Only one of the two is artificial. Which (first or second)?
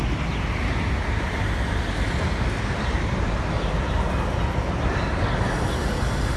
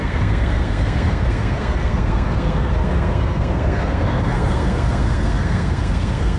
second